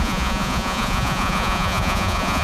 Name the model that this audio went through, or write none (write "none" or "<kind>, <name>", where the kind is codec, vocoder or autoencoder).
vocoder, Vocos